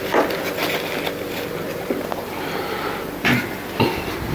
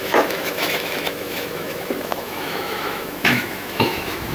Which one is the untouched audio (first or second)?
first